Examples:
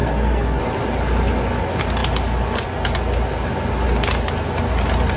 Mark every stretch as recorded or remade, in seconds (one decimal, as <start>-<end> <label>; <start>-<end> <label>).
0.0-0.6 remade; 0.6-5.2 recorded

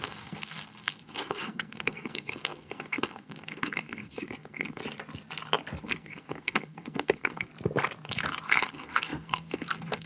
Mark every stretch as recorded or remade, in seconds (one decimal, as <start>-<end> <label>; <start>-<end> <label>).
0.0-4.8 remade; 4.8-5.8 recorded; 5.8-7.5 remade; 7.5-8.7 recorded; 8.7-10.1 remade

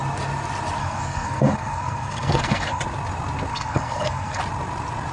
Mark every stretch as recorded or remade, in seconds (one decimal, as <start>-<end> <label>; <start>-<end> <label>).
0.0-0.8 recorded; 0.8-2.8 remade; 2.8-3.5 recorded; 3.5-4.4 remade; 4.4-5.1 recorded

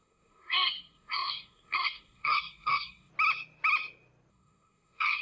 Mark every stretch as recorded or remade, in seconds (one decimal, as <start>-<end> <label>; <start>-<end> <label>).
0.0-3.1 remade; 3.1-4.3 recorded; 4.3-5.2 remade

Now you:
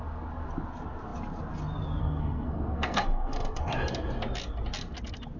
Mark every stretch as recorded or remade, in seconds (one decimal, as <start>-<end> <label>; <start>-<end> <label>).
0.0-2.0 recorded; 2.0-3.7 remade; 3.7-5.4 recorded

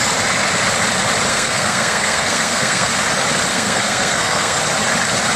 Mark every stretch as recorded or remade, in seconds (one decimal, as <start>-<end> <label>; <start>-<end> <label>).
0.0-1.3 recorded; 1.3-2.9 remade; 2.9-3.5 recorded; 3.5-4.6 remade; 4.6-5.4 recorded